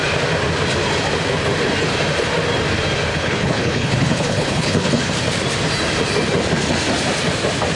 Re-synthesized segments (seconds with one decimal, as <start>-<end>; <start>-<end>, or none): 3.1-5.1